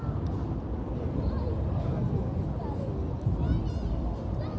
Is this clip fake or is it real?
real